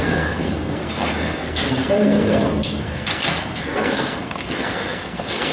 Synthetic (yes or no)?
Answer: yes